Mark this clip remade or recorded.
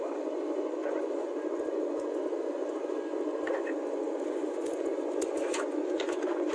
remade